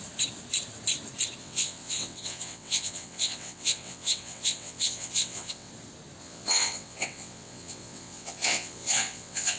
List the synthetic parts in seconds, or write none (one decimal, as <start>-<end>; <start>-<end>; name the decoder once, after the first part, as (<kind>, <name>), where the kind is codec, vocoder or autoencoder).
1.4-5.7 (vocoder, WaveNeXt); 6.2-9.6